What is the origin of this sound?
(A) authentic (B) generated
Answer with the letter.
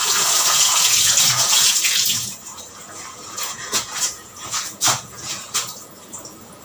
B